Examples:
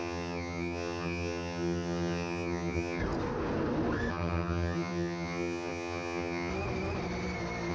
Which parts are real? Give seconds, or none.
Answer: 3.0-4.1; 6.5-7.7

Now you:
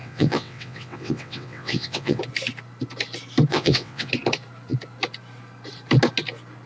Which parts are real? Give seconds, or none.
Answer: 2.2-3.5; 4.1-6.7

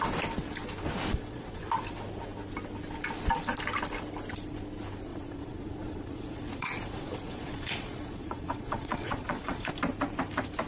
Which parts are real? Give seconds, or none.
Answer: 0.0-1.1; 1.6-5.1; 9.7-10.7